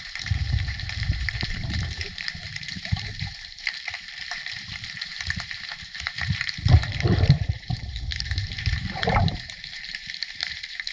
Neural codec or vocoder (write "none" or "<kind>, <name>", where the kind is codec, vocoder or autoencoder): vocoder, BigVGAN v2